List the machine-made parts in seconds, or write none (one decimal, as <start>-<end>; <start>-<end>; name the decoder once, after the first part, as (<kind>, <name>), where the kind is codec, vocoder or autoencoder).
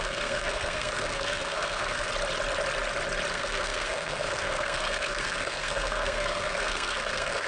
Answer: 0.0-2.1 (codec, SNAC); 3.3-7.5